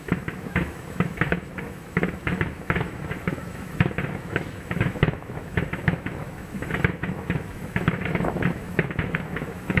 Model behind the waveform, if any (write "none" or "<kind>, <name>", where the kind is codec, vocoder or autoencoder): autoencoder, DAC-VAE